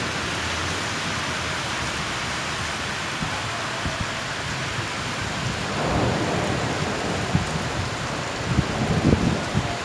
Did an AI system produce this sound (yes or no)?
no